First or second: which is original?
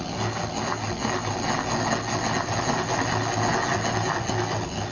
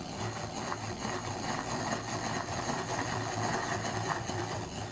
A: first